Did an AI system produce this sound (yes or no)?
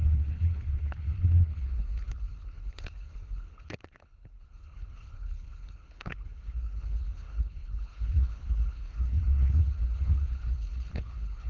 yes